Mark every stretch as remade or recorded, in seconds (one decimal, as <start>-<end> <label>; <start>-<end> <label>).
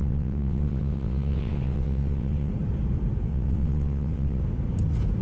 0.0-2.5 remade; 2.5-3.3 recorded; 3.3-4.4 remade; 4.4-5.2 recorded